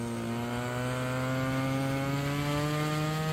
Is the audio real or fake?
real